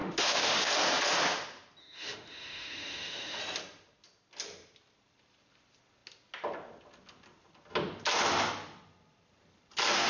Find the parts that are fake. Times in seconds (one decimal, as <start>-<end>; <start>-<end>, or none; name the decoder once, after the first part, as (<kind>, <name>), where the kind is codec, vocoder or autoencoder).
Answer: 0.0-0.7 (autoencoder, DAC-VAE); 1.8-3.4